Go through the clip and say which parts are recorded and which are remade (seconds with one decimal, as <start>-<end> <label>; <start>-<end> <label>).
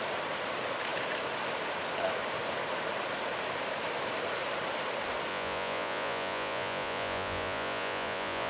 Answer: 0.0-5.3 recorded; 5.3-8.5 remade